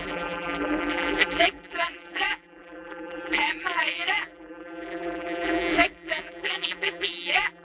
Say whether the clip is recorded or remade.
remade